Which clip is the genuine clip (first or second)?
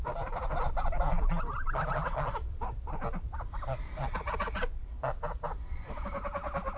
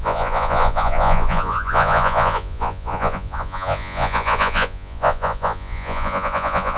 first